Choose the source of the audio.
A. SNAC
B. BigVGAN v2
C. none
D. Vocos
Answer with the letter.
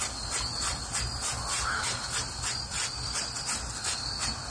C